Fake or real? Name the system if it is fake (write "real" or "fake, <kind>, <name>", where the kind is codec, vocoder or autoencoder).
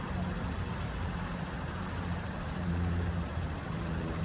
fake, vocoder, BigVGAN v2